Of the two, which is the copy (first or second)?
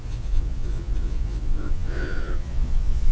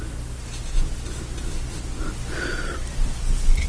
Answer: first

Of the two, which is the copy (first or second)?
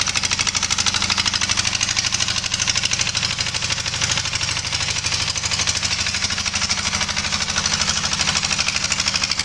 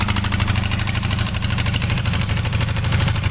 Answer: second